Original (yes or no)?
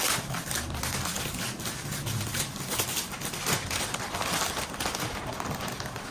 yes